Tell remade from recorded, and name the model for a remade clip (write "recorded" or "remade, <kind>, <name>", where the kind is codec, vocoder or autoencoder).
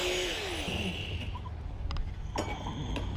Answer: recorded